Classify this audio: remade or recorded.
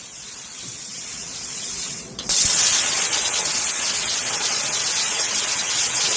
remade